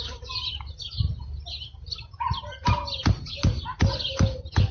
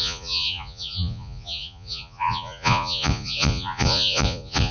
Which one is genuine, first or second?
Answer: first